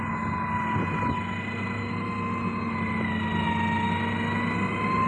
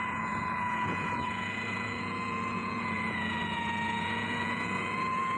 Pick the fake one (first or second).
second